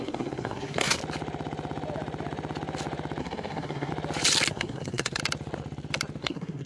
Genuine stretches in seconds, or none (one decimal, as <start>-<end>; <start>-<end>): 1.0-3.2; 3.9-4.5; 5.2-6.2

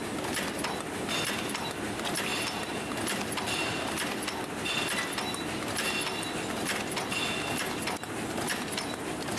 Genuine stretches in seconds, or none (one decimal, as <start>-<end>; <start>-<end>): 0.0-9.4

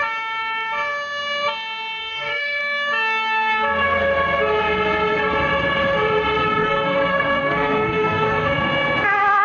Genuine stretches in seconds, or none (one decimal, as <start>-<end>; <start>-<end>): 0.0-2.0; 2.6-6.6; 8.6-9.4

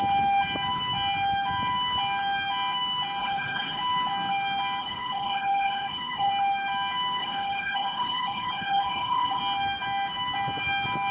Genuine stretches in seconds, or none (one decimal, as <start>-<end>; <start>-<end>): 0.0-3.2; 3.8-4.8; 6.3-7.2; 9.4-11.1

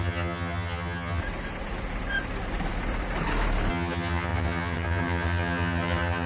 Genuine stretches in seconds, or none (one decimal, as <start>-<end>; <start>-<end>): 1.2-3.7

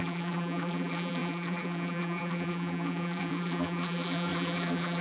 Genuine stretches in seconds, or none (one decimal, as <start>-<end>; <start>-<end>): none